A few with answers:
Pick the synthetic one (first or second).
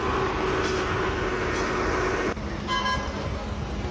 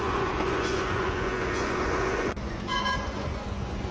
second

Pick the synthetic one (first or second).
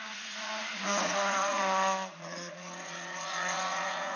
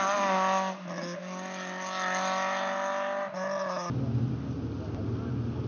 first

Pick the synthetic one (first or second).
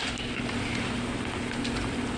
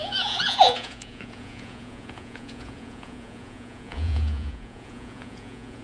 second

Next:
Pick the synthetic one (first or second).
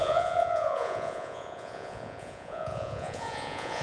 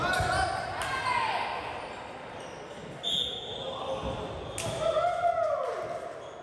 first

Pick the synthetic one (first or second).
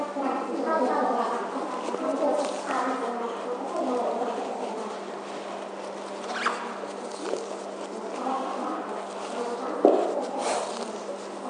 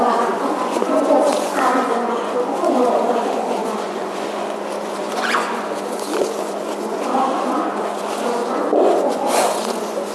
second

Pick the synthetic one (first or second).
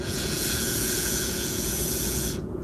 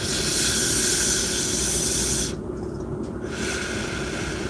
first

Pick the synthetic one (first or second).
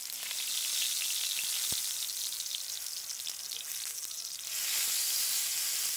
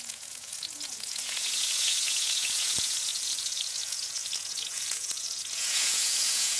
second